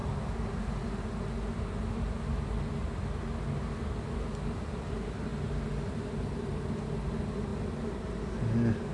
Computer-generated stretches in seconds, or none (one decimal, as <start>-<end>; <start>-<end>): none